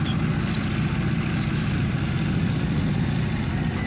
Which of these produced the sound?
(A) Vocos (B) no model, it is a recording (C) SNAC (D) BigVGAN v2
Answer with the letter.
B